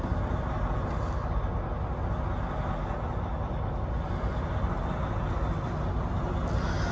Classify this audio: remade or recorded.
recorded